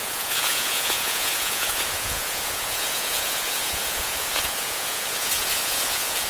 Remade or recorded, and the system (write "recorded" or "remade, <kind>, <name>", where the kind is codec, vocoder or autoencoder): remade, vocoder, Vocos